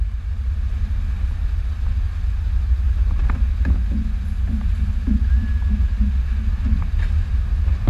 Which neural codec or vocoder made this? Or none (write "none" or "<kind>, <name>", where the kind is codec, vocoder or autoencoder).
none